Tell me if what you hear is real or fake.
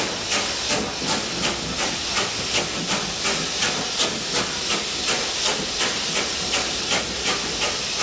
real